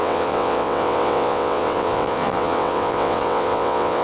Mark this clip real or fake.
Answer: fake